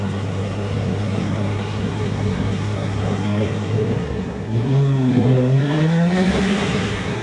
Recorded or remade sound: remade